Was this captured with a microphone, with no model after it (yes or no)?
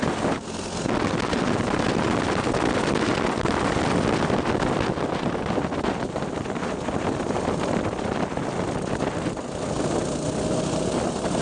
yes